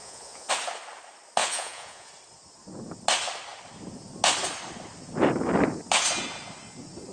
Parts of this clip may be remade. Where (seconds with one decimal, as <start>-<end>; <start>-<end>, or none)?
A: 0.0-0.5; 1.4-2.1